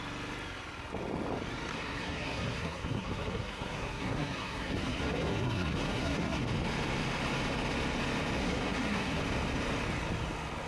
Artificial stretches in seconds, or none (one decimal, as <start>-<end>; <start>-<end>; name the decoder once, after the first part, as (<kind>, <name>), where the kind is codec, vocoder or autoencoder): 1.7-6.4 (codec, SNAC); 8.4-9.2